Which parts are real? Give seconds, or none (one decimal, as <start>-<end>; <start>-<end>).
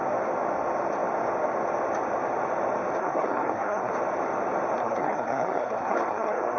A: 0.0-3.0; 3.9-4.8